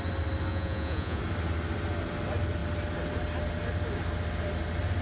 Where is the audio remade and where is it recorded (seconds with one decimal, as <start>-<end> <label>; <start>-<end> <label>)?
0.0-0.5 recorded; 0.5-1.2 remade; 1.2-5.0 recorded